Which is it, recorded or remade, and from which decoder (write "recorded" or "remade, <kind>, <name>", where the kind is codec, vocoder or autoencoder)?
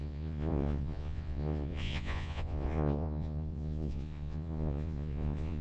remade, vocoder, Vocos